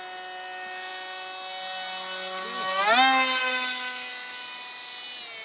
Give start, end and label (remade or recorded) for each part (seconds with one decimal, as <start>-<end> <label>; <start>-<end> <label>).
0.0-5.4 recorded